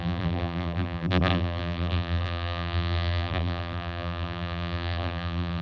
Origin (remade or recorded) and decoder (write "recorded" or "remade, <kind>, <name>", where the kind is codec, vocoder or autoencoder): remade, vocoder, BigVGAN v2